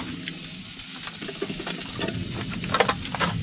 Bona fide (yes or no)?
yes